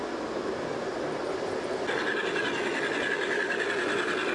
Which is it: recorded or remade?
recorded